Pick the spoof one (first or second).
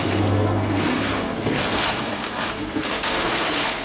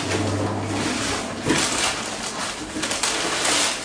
first